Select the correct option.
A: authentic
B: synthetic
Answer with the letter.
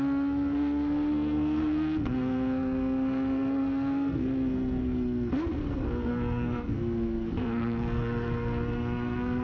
B